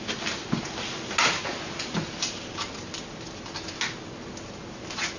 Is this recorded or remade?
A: recorded